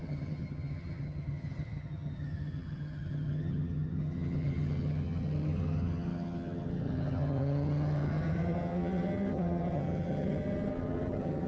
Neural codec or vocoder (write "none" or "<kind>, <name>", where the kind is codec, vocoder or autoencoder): vocoder, HiFi-GAN